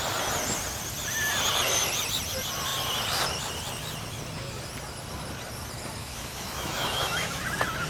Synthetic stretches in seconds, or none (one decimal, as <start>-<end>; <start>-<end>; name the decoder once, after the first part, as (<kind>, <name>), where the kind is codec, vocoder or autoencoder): 6.0-7.4 (autoencoder, DAC-VAE)